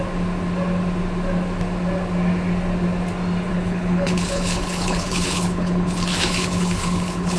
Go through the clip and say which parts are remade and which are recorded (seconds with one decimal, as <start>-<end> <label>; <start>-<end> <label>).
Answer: 0.0-3.5 recorded; 3.5-7.4 remade